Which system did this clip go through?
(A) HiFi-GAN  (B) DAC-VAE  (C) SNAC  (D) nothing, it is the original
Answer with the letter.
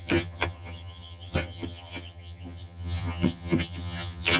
A